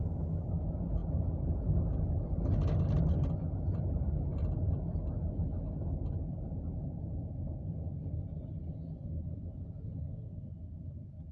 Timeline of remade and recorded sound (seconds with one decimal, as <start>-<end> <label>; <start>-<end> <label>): 0.0-11.3 recorded